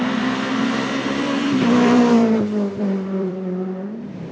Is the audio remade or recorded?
remade